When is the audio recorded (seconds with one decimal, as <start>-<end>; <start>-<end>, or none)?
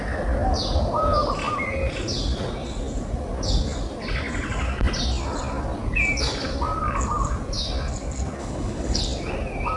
0.0-8.4; 9.0-9.8